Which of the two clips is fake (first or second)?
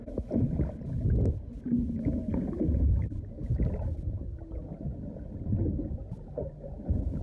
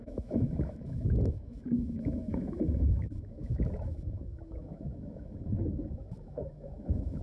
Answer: second